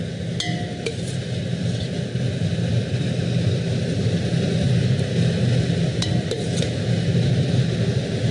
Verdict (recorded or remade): recorded